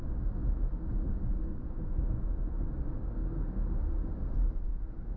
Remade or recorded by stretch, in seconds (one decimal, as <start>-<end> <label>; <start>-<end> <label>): 0.0-1.5 recorded; 1.5-2.0 remade; 2.0-5.2 recorded